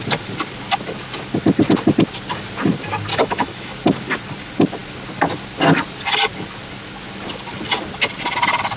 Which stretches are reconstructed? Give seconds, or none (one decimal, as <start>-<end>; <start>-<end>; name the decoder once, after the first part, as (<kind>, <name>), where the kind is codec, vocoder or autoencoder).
3.1-3.7 (autoencoder, DAC-VAE)